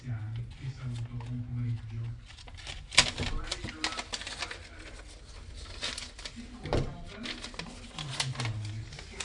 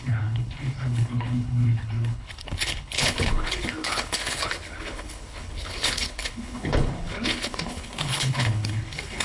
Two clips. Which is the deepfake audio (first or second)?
second